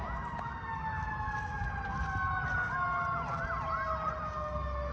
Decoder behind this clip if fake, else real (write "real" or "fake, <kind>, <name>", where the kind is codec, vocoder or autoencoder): real